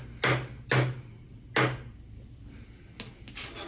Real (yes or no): yes